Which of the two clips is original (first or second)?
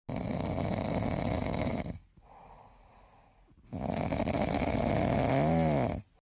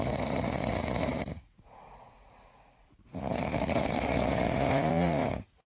first